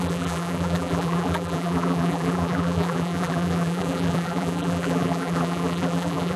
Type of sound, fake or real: fake